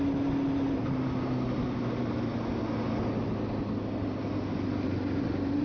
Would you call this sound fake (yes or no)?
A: no